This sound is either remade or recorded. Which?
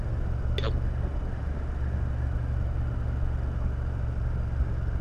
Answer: recorded